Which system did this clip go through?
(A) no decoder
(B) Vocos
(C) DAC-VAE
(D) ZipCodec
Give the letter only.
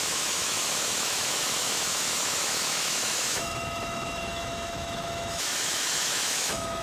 C